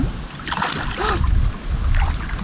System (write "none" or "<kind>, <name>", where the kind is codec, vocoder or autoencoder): none